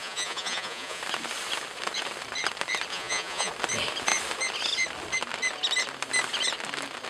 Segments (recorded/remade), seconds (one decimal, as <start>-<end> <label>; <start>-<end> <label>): 0.0-1.0 remade; 1.0-2.9 recorded; 2.9-3.5 remade; 3.5-7.1 recorded